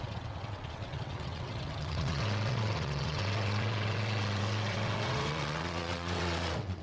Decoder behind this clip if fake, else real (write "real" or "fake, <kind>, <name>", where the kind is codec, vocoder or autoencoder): fake, vocoder, WaveNeXt